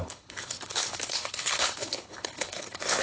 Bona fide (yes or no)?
no